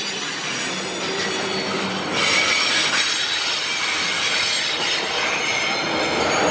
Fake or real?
real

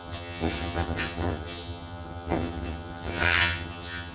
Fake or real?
fake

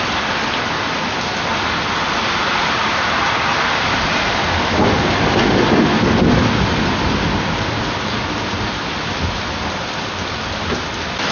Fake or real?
real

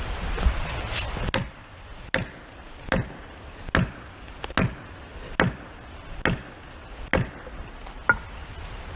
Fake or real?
real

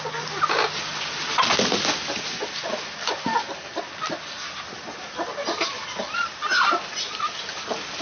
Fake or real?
real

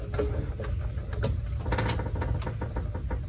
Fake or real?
real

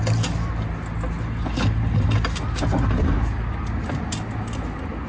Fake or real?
real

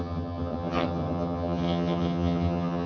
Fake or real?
fake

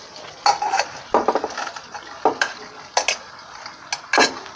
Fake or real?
real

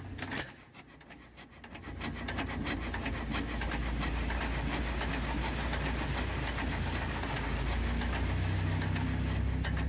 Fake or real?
real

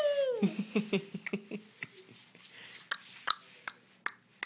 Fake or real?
real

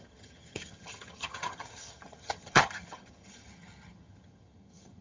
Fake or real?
fake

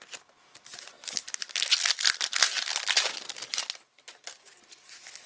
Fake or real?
real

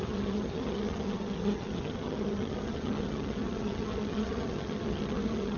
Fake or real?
fake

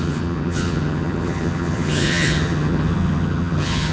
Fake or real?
fake